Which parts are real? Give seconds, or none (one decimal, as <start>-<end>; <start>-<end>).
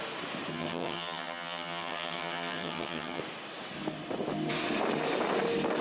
0.0-0.5; 3.2-5.8